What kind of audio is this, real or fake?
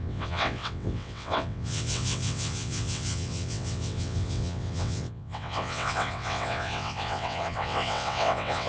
fake